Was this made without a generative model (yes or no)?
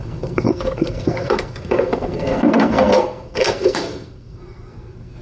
no